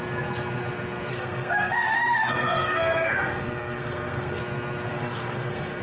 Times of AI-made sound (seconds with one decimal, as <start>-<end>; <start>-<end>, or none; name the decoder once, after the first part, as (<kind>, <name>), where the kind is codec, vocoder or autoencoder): 1.1-4.4 (codec, SNAC); 4.9-5.8